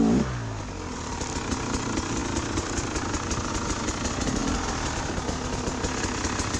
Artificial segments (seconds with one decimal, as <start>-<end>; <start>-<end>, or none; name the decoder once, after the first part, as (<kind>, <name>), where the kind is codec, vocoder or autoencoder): 4.4-5.0 (vocoder, BigVGAN v2)